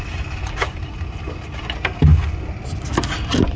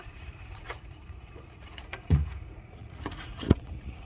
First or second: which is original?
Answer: first